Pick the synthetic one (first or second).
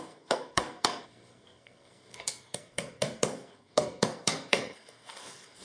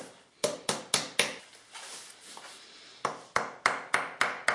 first